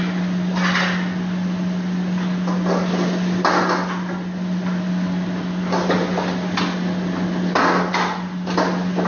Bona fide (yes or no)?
yes